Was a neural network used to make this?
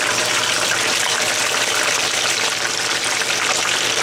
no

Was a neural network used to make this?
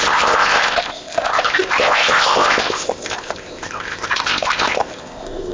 yes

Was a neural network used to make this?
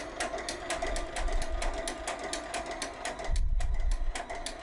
no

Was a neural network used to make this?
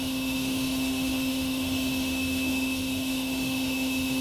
yes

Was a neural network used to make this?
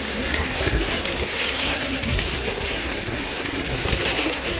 yes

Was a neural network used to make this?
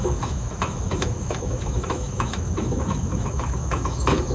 yes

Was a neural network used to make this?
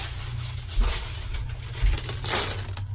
no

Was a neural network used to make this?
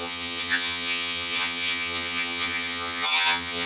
yes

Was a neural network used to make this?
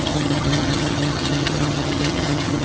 yes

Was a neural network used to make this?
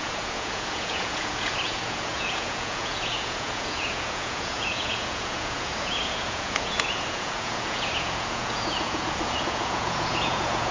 yes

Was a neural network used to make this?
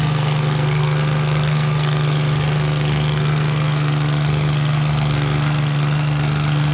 yes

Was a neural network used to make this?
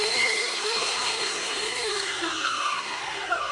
yes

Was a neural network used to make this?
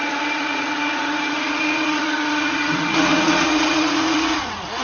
yes